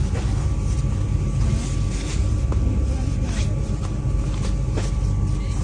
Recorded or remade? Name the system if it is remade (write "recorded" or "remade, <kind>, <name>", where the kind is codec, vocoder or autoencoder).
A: recorded